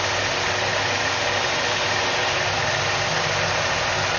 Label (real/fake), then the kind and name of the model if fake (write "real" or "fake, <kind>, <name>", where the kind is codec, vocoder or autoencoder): real